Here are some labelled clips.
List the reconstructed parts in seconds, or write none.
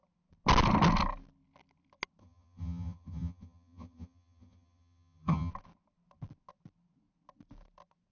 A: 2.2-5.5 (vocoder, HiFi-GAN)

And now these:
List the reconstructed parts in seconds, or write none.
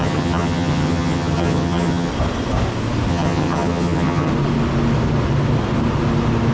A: 0.0-2.1 (vocoder, HiFi-GAN); 3.1-4.3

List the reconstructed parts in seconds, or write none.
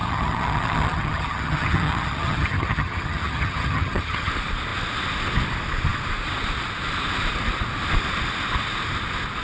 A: 0.0-4.3 (vocoder, HiFi-GAN)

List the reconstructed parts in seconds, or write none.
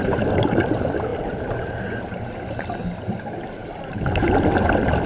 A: none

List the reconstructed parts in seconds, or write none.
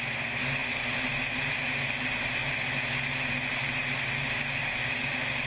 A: none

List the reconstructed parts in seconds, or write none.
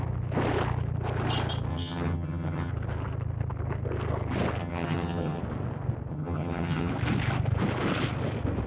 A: 1.7-2.7 (vocoder, HiFi-GAN); 4.6-5.4; 6.1-6.9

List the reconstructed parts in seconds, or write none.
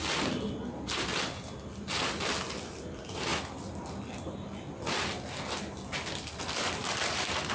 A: none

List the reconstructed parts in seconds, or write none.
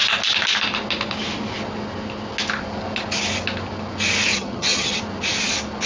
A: 4.3-5.0 (vocoder, HiFi-GAN)